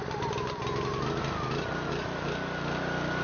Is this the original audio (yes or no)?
yes